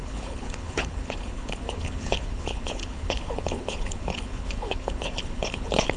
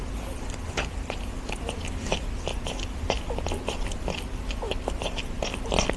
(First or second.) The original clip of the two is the second